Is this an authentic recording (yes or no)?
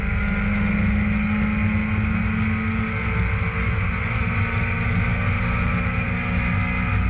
yes